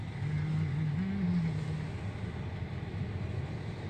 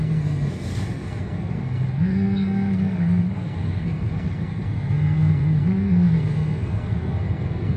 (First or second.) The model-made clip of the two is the second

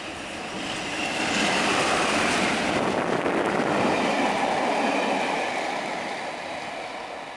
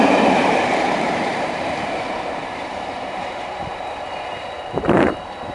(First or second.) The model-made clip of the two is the second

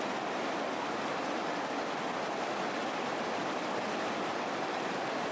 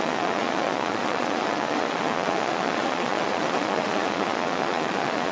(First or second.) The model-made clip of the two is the second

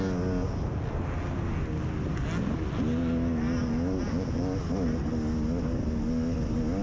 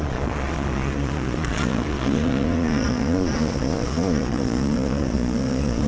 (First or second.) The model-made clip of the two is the second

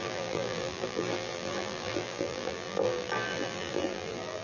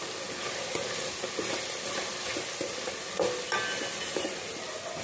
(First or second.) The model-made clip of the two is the first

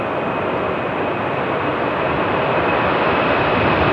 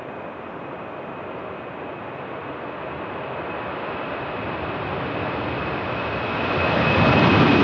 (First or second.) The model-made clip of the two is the first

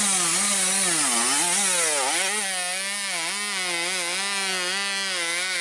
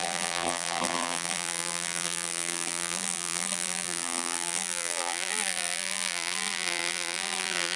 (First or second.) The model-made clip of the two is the second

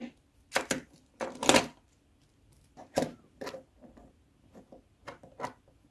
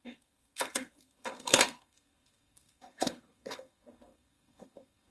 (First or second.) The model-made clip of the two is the second